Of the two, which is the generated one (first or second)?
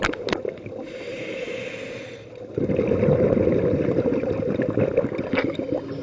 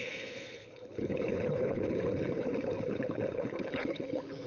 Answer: second